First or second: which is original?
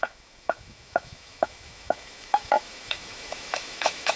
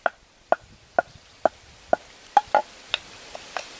second